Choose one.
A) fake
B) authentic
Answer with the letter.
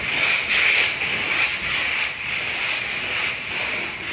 B